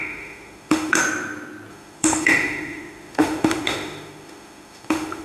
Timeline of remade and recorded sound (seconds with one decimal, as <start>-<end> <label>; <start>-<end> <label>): 0.0-1.0 remade; 1.0-1.7 recorded; 1.7-5.2 remade